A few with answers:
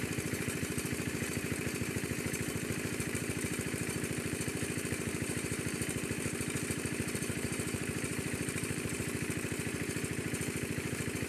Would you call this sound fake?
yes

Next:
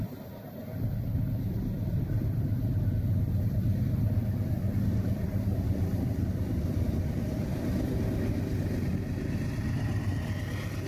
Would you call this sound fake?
yes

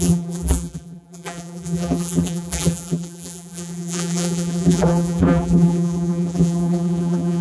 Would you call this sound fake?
yes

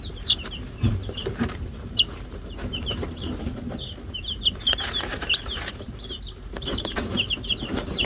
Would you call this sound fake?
yes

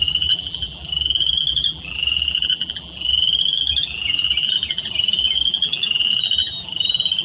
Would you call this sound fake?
yes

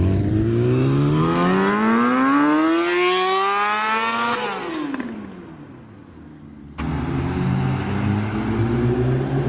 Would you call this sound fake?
no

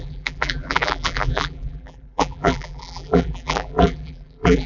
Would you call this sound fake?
yes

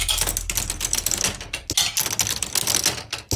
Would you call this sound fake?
no